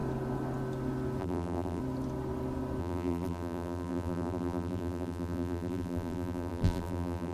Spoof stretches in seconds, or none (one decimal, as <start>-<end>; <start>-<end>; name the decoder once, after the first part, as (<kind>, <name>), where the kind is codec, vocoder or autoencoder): 1.2-1.8 (vocoder, BigVGAN v2); 2.8-7.3